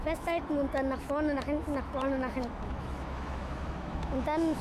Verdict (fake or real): fake